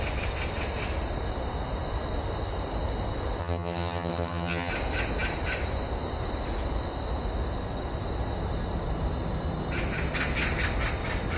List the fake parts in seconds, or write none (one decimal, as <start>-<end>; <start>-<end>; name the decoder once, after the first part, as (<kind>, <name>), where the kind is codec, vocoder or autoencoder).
3.4-4.7 (vocoder, HiFi-GAN)